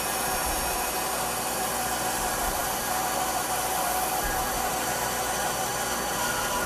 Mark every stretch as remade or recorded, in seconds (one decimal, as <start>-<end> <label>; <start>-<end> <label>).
0.0-6.7 recorded